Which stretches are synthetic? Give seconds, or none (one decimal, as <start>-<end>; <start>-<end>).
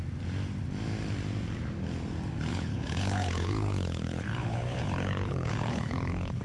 2.5-6.4